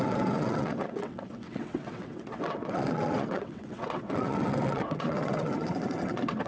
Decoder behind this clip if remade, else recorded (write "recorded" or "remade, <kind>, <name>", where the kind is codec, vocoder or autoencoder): remade, vocoder, WaveNeXt